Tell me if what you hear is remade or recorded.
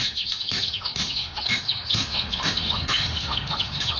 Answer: remade